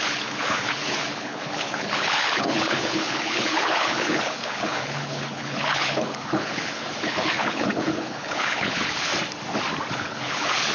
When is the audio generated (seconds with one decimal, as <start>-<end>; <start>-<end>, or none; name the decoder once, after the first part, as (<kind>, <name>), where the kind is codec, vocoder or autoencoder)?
0.0-9.1 (codec, HILCodec); 9.9-10.7

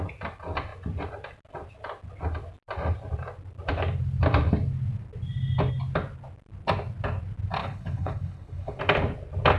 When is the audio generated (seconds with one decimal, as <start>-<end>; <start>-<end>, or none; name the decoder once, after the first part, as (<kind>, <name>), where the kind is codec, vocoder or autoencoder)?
7.6-8.8 (codec, HILCodec)

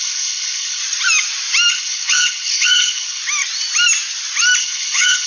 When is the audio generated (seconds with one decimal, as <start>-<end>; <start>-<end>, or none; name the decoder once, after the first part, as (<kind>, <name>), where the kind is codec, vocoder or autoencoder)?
0.0-0.8 (codec, HILCodec); 1.7-3.2; 4.6-5.3

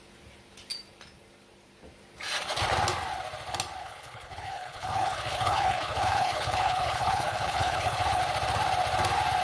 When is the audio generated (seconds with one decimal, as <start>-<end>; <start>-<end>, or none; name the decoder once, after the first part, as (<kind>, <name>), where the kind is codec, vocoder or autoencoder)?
3.8-8.2 (codec, HILCodec)

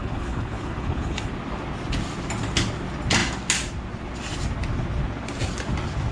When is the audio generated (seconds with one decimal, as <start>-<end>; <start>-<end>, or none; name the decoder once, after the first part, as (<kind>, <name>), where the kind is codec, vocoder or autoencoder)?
0.0-1.3 (codec, HILCodec)